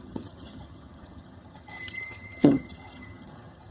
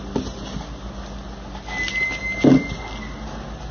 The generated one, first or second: first